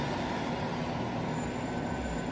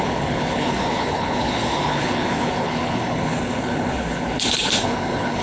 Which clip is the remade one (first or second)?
second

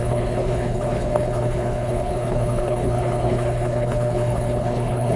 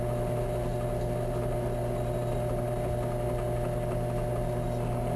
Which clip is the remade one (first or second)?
first